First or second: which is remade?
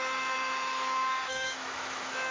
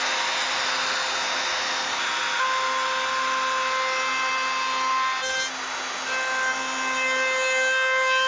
first